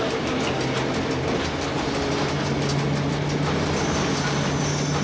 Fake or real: real